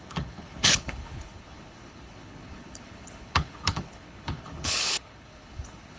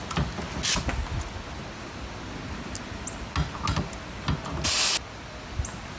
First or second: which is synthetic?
first